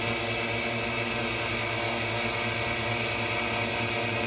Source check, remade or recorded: recorded